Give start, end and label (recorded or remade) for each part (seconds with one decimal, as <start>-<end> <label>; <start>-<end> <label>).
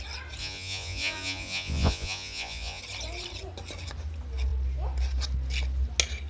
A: 0.0-0.4 recorded; 0.4-2.8 remade; 2.8-6.3 recorded